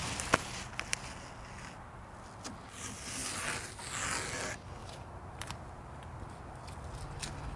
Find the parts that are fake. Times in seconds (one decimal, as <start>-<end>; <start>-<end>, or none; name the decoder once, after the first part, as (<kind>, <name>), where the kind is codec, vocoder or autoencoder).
0.0-0.8 (vocoder, BigVGAN v2); 4.8-6.1